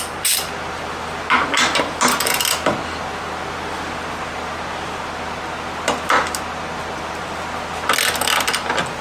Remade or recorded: recorded